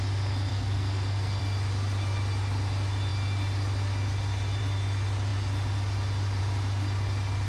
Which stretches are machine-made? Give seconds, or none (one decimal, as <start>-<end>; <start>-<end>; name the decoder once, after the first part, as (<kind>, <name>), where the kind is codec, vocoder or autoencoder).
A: 0.5-1.4 (codec, SNAC)